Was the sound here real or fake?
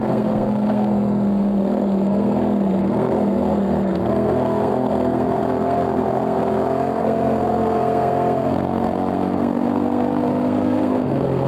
fake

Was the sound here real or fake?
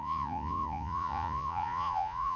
fake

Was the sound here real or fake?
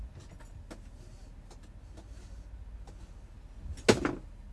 real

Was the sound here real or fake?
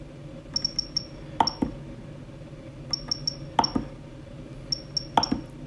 real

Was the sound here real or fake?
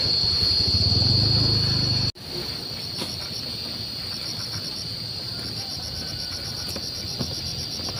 real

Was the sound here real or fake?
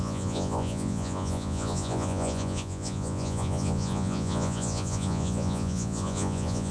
fake